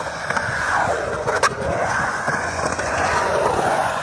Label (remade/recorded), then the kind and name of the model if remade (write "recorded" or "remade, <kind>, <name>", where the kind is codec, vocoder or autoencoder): remade, vocoder, Vocos